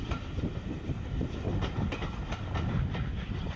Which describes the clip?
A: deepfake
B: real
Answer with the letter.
B